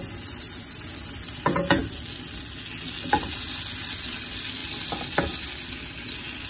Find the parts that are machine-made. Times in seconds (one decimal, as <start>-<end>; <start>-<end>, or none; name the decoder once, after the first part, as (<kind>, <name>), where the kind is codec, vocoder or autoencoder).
none